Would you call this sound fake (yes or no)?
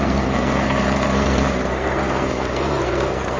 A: yes